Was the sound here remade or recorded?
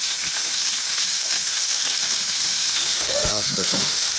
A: remade